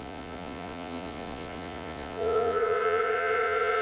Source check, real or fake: fake